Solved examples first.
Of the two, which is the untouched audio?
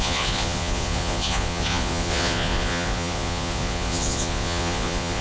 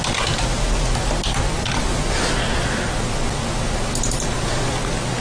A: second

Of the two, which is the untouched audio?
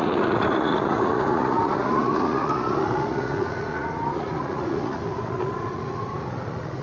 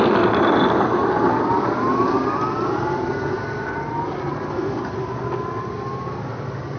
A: second